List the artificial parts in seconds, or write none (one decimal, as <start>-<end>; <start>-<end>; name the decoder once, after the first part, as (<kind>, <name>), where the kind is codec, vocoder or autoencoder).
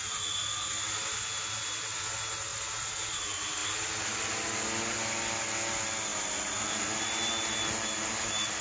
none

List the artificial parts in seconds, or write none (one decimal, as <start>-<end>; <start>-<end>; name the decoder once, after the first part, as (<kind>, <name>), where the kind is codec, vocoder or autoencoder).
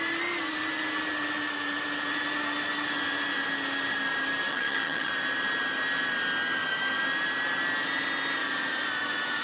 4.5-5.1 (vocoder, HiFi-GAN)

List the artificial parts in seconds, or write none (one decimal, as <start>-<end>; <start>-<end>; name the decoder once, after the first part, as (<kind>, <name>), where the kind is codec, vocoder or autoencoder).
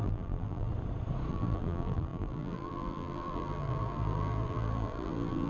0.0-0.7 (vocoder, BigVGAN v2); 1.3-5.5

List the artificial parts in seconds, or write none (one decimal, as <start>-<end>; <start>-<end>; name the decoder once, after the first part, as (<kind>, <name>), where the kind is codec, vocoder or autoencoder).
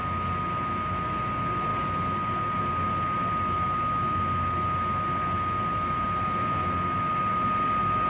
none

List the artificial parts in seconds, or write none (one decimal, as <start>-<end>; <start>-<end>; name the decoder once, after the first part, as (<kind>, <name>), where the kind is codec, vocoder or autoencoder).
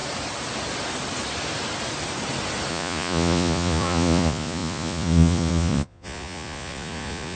2.7-7.4 (vocoder, Vocos)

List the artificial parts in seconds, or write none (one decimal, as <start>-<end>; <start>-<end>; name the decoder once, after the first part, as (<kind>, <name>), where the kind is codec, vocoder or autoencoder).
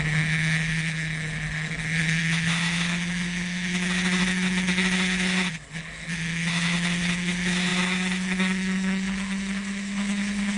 0.0-10.6 (codec, HILCodec)